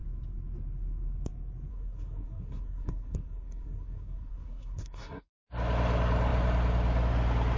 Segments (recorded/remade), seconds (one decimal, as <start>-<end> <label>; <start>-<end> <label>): 0.0-1.7 recorded; 1.7-5.3 remade; 5.3-7.6 recorded